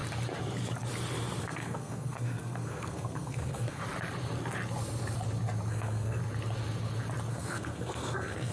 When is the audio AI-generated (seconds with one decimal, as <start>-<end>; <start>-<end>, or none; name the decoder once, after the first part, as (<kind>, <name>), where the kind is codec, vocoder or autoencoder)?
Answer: 1.4-3.8 (codec, SNAC); 5.7-6.2; 7.3-8.5

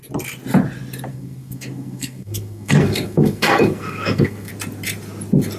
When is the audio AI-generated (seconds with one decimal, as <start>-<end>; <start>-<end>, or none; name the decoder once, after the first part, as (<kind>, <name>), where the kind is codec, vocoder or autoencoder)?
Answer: 1.1-4.5 (codec, SNAC)

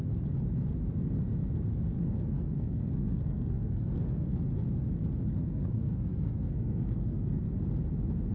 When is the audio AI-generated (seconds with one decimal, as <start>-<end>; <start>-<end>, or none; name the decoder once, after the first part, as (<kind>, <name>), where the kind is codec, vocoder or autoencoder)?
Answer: 1.9-4.4 (codec, SNAC); 5.3-7.4

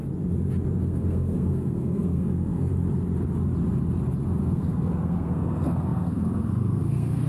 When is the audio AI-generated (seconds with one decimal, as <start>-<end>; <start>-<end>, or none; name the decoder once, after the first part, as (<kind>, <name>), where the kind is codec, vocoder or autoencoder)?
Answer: 0.8-2.7 (codec, SNAC); 4.4-7.3

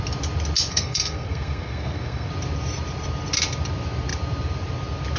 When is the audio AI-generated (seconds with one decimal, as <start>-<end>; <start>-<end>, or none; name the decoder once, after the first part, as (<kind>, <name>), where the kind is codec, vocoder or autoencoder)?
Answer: 0.7-2.3 (codec, SNAC)

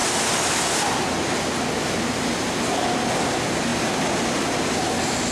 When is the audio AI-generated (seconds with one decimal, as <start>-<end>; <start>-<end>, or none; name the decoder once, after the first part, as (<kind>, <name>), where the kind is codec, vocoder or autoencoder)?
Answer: none

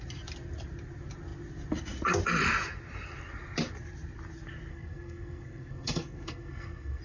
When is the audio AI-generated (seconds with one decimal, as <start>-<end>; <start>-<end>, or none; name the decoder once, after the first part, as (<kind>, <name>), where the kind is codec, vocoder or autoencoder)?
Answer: 4.7-7.0 (codec, SNAC)